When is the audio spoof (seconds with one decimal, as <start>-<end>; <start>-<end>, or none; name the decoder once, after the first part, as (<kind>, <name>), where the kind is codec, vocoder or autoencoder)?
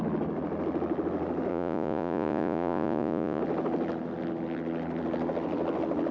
1.5-3.4 (vocoder, Vocos)